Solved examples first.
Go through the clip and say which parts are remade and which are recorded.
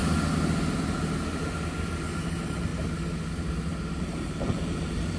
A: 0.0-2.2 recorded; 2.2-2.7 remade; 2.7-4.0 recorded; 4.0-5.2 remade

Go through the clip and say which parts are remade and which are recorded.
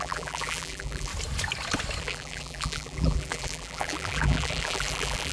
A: 0.0-1.1 remade; 1.1-2.0 recorded; 2.0-5.3 remade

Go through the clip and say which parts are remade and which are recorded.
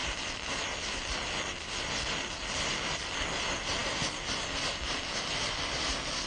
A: 0.0-6.3 recorded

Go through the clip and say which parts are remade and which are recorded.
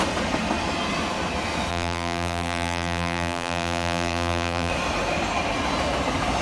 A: 0.0-1.7 recorded; 1.7-4.7 remade; 4.7-6.4 recorded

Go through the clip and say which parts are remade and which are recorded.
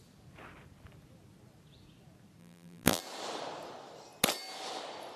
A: 0.0-2.4 recorded; 2.4-3.0 remade; 3.0-5.2 recorded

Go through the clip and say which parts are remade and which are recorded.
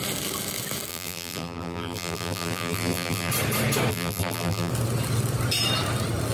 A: 0.0-0.9 recorded; 0.9-3.3 remade; 3.3-3.9 recorded; 3.9-4.7 remade; 4.7-6.3 recorded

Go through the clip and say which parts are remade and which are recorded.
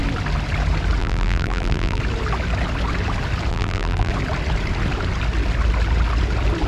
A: 0.0-1.0 recorded; 1.0-2.0 remade; 2.0-3.5 recorded; 3.5-4.1 remade; 4.1-6.7 recorded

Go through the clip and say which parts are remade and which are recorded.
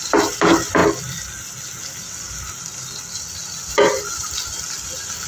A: 0.0-5.3 recorded